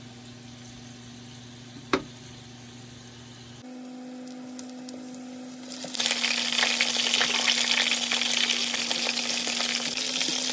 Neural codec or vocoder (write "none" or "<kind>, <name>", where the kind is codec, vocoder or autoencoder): none